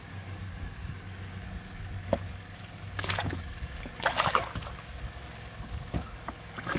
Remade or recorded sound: remade